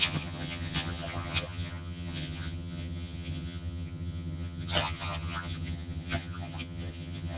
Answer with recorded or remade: remade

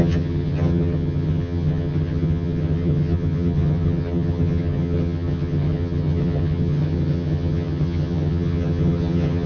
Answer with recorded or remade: remade